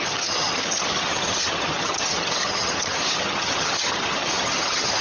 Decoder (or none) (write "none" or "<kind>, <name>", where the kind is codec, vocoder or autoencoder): vocoder, HiFi-GAN